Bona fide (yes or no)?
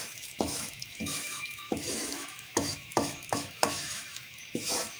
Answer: no